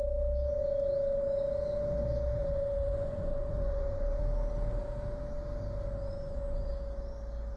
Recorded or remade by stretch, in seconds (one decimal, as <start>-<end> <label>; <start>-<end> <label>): 0.0-2.4 recorded; 2.4-4.2 remade; 4.2-6.1 recorded; 6.1-6.7 remade; 6.7-7.6 recorded

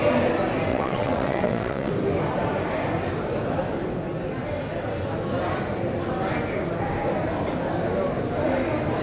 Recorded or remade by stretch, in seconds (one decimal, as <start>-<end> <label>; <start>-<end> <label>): 0.0-0.7 recorded; 0.7-1.9 remade; 1.9-9.0 recorded